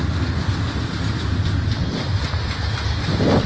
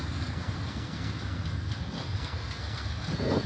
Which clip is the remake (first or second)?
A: second